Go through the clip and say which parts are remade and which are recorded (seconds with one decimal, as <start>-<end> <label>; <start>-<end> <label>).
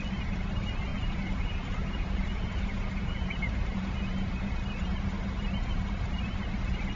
0.0-0.9 recorded; 0.9-4.5 remade; 4.5-7.0 recorded